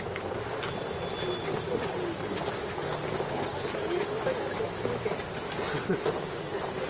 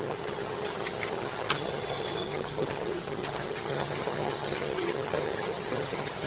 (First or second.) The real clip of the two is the first